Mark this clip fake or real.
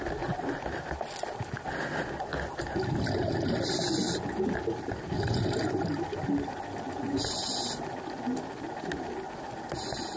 real